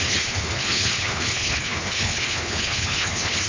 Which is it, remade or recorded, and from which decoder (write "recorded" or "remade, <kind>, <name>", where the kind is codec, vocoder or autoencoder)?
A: remade, codec, HILCodec